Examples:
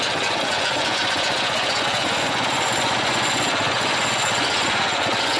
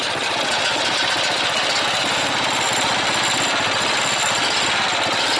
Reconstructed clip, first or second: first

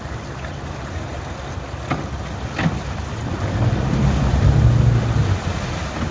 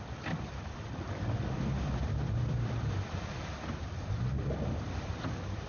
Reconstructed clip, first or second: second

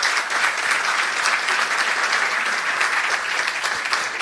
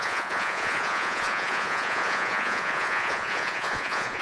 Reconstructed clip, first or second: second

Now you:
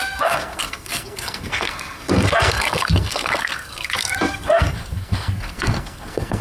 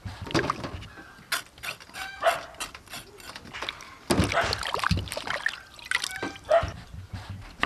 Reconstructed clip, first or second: first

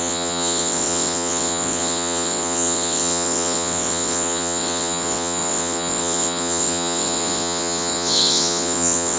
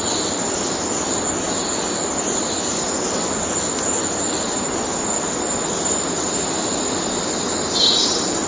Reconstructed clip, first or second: first